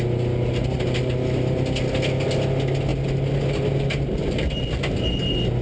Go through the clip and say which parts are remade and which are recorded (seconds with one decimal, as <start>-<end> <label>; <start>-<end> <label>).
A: 0.0-5.6 recorded